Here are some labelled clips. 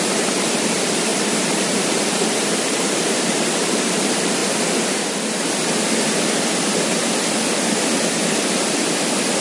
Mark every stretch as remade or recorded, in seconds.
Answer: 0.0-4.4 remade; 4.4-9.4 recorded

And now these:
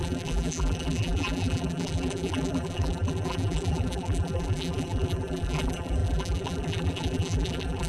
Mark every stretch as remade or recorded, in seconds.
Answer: 0.0-7.9 remade

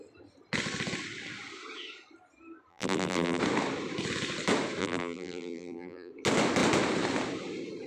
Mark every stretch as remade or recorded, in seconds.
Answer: 0.0-2.7 recorded; 2.7-3.4 remade; 3.4-4.8 recorded; 4.8-6.1 remade; 6.1-7.9 recorded